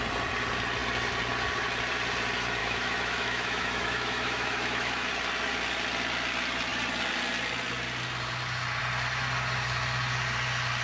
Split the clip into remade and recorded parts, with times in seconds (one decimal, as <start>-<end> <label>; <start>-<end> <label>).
0.0-2.6 recorded; 2.6-5.1 remade; 5.1-10.8 recorded